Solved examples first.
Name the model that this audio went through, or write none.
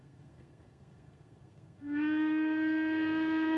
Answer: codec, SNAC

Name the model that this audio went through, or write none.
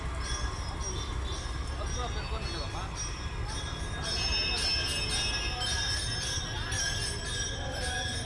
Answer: none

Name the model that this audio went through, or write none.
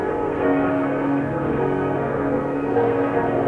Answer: codec, SNAC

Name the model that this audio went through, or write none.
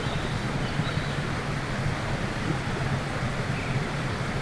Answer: none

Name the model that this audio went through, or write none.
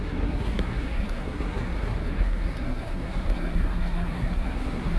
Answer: codec, SNAC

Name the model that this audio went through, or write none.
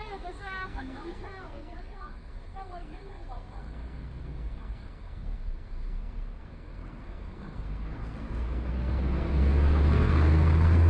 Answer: codec, SNAC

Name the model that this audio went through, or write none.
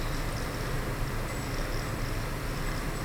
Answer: none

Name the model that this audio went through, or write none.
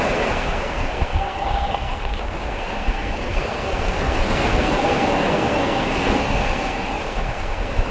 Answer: codec, SNAC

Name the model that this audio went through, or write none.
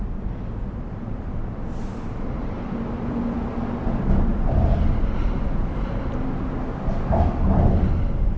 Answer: none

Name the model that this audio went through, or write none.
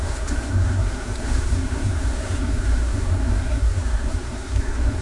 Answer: codec, SNAC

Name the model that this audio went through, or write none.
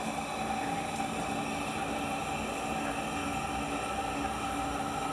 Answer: none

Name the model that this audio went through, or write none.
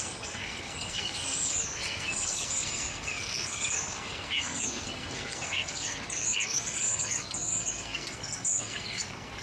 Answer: codec, SNAC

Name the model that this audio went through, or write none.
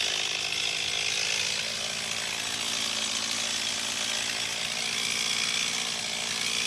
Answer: none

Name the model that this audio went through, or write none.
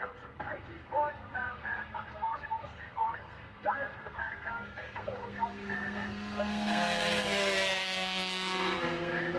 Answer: codec, SNAC